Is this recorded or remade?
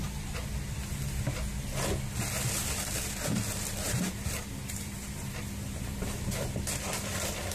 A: recorded